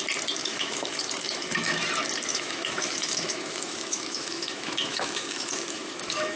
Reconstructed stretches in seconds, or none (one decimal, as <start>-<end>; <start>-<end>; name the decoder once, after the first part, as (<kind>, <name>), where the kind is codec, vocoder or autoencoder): 0.4-1.8 (autoencoder, DAC-VAE); 2.3-6.4